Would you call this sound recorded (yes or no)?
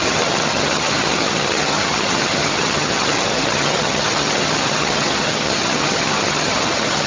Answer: no